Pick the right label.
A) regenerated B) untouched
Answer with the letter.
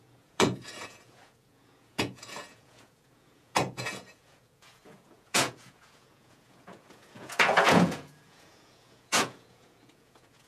A